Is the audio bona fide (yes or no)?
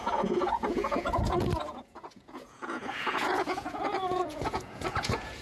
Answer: no